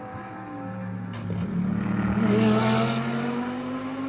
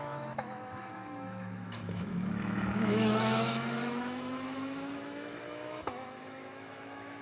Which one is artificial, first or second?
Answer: second